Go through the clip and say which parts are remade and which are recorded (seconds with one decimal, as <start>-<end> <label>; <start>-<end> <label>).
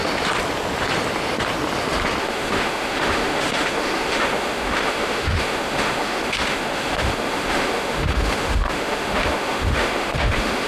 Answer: 0.0-2.2 recorded; 2.2-10.7 remade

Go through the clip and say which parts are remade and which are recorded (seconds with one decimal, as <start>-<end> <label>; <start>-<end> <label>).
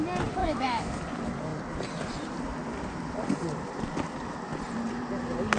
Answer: 0.0-0.4 recorded; 0.4-0.9 remade; 0.9-5.6 recorded